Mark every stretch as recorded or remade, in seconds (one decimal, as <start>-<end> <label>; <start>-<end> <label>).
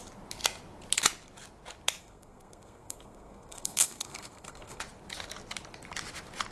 0.0-2.0 recorded; 2.0-4.8 remade; 4.8-6.5 recorded